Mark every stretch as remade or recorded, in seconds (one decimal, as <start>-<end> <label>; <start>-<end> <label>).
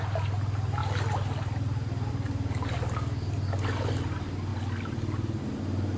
0.0-4.5 recorded; 4.5-5.4 remade; 5.4-6.0 recorded